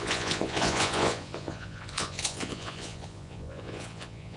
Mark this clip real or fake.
fake